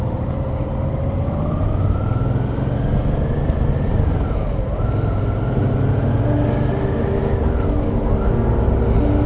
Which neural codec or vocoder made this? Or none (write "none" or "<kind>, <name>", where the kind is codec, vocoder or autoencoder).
none